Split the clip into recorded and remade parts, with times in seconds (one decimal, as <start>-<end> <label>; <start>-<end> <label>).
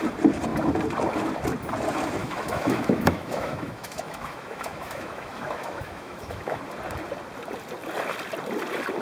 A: 0.0-2.2 recorded; 2.2-6.6 remade; 6.6-9.0 recorded